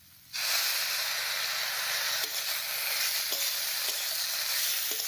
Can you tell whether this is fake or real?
fake